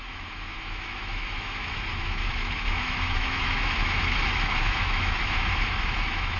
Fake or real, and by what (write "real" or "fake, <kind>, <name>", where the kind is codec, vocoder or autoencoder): fake, autoencoder, DAC-VAE